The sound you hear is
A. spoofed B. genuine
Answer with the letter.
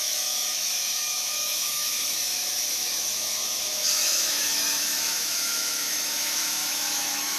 A